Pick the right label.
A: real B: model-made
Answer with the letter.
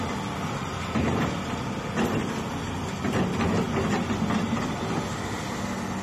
A